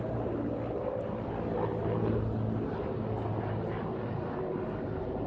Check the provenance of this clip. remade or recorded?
recorded